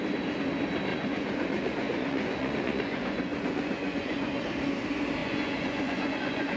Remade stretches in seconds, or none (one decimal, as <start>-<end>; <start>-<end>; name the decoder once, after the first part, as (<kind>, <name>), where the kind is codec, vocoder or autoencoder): 0.9-4.4 (vocoder, Vocos); 5.2-6.6